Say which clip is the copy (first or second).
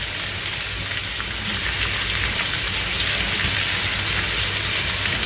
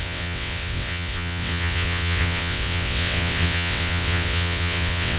second